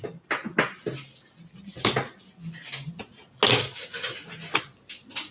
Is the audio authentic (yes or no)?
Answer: yes